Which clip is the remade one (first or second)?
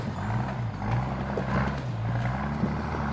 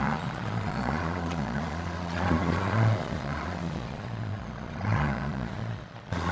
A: second